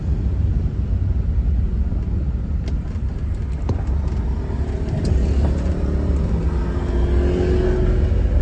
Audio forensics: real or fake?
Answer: real